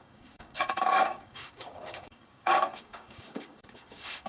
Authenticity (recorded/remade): remade